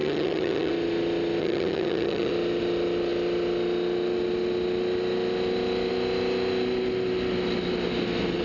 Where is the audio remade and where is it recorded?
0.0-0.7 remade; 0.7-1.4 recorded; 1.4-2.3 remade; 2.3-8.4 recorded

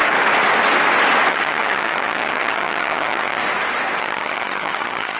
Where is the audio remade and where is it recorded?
0.0-1.3 recorded; 1.3-3.4 remade; 3.4-4.0 recorded; 4.0-5.2 remade